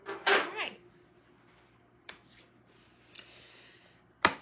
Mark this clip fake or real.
real